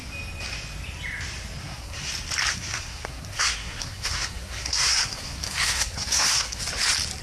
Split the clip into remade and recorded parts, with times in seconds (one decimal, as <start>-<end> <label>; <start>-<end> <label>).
0.0-1.6 recorded; 1.6-2.1 remade; 2.1-2.5 recorded; 2.5-6.6 remade; 6.6-7.2 recorded

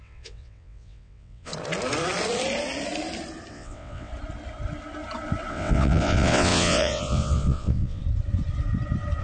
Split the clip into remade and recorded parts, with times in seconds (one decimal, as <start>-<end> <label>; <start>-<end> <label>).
0.0-1.5 remade; 1.5-3.5 recorded; 3.5-4.1 remade; 4.1-5.5 recorded; 5.5-8.0 remade; 8.0-9.2 recorded

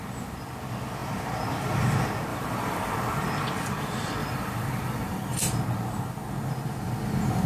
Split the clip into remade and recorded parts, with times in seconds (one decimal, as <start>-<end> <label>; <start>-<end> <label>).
0.0-2.3 recorded; 2.3-3.3 remade; 3.3-4.2 recorded; 4.2-5.4 remade; 5.4-7.5 recorded

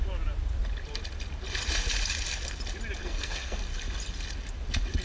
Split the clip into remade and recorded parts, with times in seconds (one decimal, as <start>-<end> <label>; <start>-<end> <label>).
0.0-3.0 recorded; 3.0-3.6 remade; 3.6-5.0 recorded